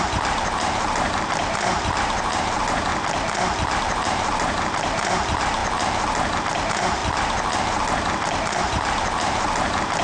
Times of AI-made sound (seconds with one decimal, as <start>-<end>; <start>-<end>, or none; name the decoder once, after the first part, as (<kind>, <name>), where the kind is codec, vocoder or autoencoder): 0.0-2.9 (vocoder, BigVGAN v2); 3.8-5.6; 6.4-7.0; 8.6-10.0